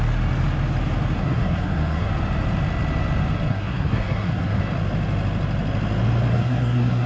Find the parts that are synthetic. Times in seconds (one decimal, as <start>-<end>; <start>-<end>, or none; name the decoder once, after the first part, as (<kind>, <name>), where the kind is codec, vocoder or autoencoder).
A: 1.2-2.1 (codec, SNAC); 3.5-4.6; 6.3-7.1